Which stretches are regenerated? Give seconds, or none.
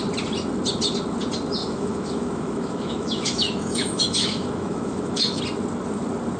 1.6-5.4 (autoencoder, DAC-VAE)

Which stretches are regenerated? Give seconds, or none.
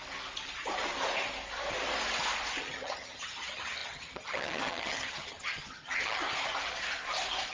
2.6-6.2 (vocoder, HiFi-GAN)